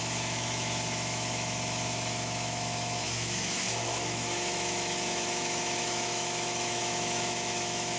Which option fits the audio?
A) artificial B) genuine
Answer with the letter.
A